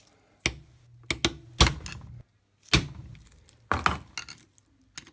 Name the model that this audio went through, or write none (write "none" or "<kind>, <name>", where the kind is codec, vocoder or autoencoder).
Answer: none